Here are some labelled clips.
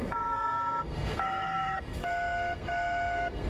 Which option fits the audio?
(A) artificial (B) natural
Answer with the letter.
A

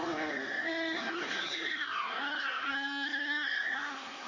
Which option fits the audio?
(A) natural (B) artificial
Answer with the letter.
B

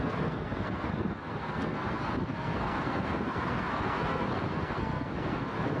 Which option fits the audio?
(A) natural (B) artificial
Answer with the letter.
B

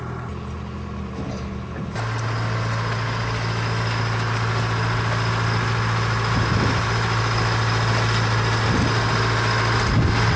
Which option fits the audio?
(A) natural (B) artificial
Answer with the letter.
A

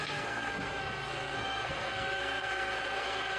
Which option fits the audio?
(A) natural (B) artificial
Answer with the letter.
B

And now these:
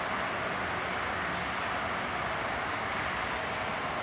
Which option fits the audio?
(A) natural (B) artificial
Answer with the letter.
A